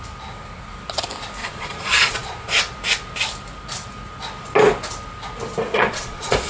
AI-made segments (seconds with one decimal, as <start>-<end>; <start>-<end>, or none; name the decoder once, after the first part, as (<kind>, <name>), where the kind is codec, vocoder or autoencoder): 1.4-2.6 (vocoder, Vocos); 5.7-6.5